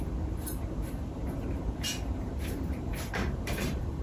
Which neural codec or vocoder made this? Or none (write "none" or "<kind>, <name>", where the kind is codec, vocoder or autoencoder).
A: vocoder, BigVGAN v2